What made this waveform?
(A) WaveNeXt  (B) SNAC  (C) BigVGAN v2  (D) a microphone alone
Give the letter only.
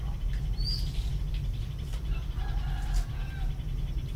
D